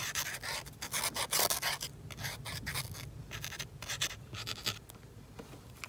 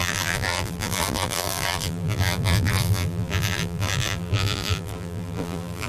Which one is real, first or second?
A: first